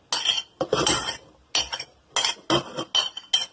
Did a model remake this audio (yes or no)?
no